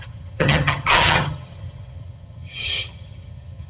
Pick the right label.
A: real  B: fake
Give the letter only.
B